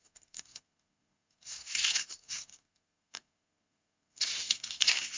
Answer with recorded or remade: remade